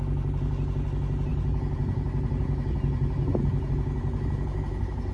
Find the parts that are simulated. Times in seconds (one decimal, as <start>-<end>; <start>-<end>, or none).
none